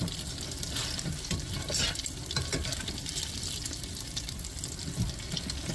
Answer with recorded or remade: recorded